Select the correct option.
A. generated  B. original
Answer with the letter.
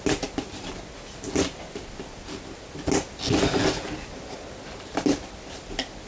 B